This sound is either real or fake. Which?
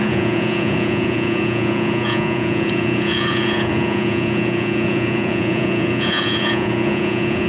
fake